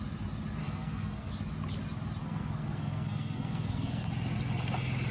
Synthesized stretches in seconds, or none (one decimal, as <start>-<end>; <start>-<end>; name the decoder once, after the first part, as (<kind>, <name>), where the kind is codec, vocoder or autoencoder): 0.6-1.3 (codec, SNAC); 2.2-4.1